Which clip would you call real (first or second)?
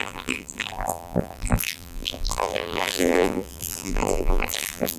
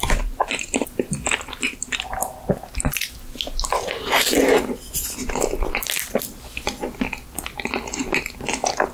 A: second